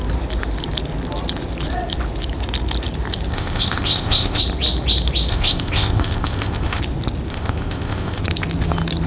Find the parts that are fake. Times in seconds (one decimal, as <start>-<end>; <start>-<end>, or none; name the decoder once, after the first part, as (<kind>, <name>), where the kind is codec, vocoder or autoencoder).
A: 3.3-4.4 (codec, ZipCodec); 5.3-6.8; 7.3-8.2